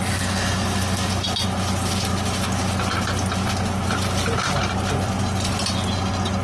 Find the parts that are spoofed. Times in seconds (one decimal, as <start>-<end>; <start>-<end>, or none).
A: none